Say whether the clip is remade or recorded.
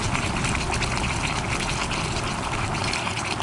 recorded